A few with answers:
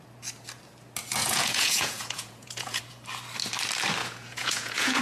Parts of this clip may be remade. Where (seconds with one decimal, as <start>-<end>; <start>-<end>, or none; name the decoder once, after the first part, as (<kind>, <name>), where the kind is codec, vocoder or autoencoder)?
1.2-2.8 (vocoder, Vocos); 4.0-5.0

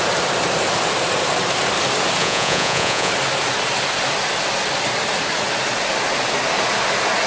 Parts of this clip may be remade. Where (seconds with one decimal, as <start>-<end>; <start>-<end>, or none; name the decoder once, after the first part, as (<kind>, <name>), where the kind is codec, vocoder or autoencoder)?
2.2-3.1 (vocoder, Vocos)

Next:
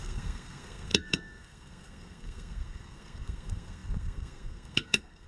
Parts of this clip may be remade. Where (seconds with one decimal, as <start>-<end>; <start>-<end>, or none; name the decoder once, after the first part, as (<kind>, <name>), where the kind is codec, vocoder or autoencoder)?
0.0-5.3 (codec, SNAC)

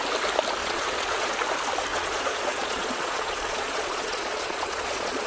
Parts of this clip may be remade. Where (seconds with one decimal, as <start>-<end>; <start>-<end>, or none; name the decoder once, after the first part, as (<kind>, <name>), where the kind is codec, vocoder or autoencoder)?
0.6-1.3 (vocoder, Vocos); 1.9-5.3